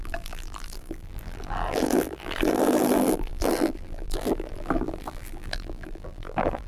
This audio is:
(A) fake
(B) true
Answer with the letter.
A